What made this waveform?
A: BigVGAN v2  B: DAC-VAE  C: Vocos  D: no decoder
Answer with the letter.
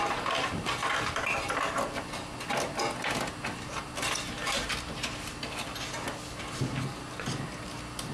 D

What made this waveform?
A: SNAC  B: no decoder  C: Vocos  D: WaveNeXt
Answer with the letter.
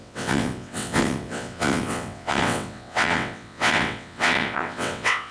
D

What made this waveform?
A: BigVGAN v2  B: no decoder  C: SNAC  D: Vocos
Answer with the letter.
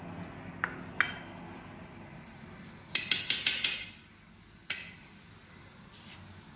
B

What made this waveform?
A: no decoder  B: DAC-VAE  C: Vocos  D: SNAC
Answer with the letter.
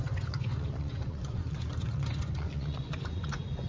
C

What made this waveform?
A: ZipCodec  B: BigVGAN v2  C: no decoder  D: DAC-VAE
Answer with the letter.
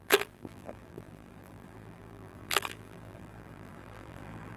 B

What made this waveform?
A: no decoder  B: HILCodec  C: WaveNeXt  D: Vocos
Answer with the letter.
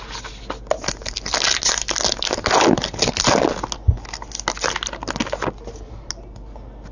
A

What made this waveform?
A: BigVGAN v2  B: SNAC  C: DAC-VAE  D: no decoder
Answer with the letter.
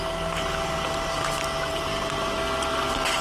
D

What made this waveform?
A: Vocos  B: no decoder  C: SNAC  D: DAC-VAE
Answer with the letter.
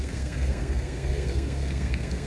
C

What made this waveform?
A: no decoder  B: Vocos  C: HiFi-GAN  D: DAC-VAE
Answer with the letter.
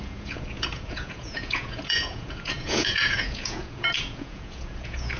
B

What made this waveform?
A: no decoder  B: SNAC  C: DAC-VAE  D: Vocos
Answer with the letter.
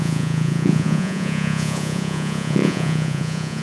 D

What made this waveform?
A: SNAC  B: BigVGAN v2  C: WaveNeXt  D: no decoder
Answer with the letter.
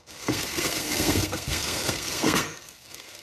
A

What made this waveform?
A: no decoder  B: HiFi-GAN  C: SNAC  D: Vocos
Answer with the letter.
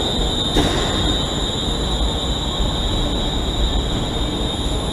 A